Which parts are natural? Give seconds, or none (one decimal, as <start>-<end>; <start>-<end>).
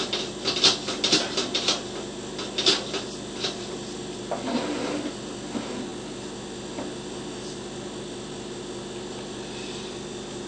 0.0-10.5